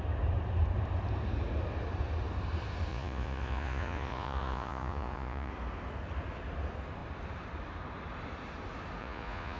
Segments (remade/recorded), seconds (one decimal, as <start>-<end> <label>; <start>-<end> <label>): 0.0-2.9 recorded; 2.9-5.5 remade; 5.5-9.0 recorded; 9.0-9.6 remade

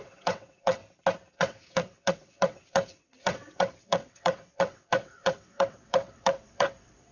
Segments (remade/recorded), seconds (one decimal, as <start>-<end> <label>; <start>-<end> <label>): 0.0-0.8 remade; 0.8-1.3 recorded; 1.3-7.1 remade

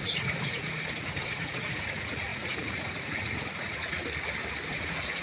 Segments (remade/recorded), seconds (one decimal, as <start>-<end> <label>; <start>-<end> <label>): 0.0-4.0 remade; 4.0-4.7 recorded; 4.7-5.2 remade